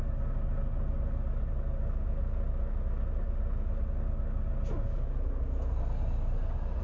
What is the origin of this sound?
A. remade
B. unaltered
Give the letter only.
B